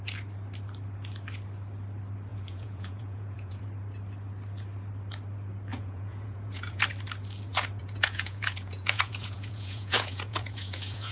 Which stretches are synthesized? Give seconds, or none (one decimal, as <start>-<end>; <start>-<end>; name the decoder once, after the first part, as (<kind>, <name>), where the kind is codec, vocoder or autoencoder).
2.3-3.6 (vocoder, Vocos); 5.7-6.8; 7.5-11.1

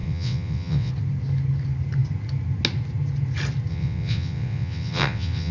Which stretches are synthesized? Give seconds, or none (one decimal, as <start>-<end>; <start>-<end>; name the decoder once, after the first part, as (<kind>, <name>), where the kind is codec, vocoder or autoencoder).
0.0-0.9 (vocoder, WaveNeXt); 3.7-5.5

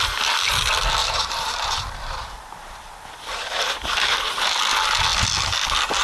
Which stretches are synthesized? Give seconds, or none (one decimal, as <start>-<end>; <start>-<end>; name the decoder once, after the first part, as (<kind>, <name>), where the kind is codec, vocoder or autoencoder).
1.0-4.6 (vocoder, BigVGAN v2)

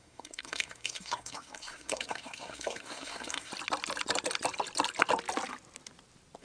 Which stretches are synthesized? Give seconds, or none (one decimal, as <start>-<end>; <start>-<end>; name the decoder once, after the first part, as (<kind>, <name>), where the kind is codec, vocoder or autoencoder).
0.0-3.5 (codec, SNAC)

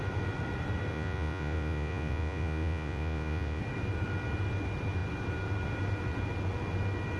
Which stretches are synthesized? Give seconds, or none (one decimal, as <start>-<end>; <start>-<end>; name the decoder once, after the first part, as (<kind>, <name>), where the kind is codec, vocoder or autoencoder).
0.9-3.6 (vocoder, Vocos)

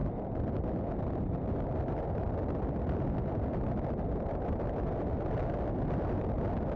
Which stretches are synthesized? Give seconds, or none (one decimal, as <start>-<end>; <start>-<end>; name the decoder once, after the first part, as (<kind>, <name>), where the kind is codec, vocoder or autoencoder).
none

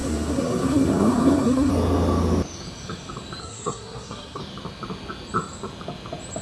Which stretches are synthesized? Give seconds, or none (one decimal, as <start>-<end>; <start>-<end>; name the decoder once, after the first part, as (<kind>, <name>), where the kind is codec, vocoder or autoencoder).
0.0-1.7 (codec, SNAC); 3.4-4.4